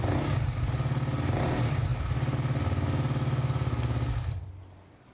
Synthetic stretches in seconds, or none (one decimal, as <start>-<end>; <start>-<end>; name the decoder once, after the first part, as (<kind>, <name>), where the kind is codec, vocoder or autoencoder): none